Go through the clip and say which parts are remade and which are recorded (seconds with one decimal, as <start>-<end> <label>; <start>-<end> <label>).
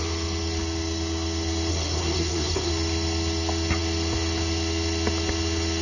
0.0-1.7 recorded; 1.7-2.7 remade; 2.7-5.8 recorded